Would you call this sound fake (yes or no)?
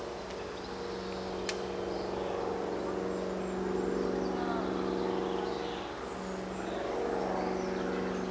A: no